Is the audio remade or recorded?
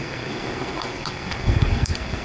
remade